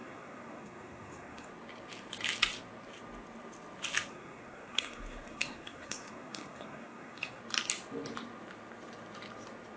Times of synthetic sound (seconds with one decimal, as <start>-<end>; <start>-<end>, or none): 0.0-1.5; 4.1-7.4